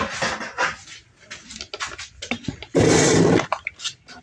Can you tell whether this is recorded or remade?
recorded